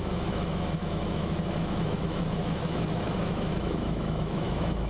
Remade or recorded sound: remade